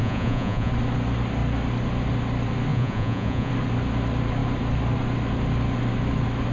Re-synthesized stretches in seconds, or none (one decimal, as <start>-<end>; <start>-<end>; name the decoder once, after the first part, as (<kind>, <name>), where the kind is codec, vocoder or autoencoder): 0.0-0.7 (vocoder, Vocos); 2.7-3.5

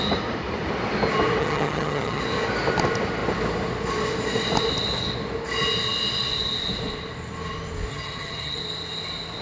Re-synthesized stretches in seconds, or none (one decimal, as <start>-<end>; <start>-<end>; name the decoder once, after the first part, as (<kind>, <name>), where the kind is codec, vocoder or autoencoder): 1.4-2.2 (vocoder, HiFi-GAN); 7.9-8.6

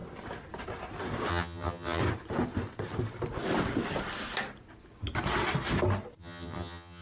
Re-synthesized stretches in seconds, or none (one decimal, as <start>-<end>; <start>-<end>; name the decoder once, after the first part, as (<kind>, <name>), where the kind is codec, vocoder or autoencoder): 1.3-2.0 (vocoder, HiFi-GAN); 6.2-7.0

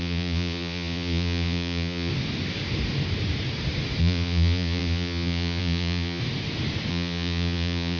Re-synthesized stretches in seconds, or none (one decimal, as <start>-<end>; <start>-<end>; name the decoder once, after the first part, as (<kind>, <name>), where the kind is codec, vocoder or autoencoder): 0.0-2.1 (vocoder, Vocos); 4.0-6.2; 6.9-8.0

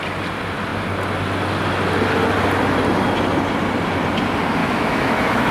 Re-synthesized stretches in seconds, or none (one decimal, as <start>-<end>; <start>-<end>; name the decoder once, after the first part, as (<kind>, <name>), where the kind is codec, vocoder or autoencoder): 4.6-5.5 (autoencoder, DAC-VAE)

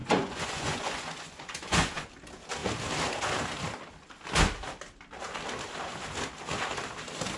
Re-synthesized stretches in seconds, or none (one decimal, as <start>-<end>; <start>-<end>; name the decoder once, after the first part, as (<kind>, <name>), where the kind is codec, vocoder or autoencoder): 0.0-2.1 (vocoder, Vocos)

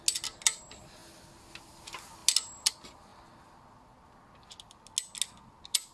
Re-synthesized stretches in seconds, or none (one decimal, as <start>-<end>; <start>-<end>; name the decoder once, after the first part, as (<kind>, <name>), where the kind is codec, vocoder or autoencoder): none